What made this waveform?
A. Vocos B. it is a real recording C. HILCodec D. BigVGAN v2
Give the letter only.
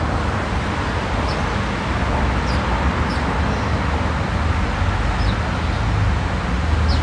B